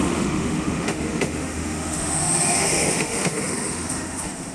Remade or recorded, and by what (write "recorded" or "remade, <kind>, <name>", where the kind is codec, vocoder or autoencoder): remade, autoencoder, DAC-VAE